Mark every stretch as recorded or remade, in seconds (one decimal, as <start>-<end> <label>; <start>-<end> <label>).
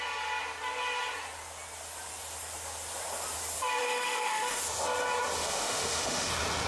0.0-3.8 recorded; 3.8-4.6 remade; 4.6-5.4 recorded; 5.4-6.3 remade; 6.3-6.7 recorded